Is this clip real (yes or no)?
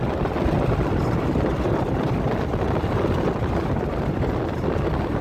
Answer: yes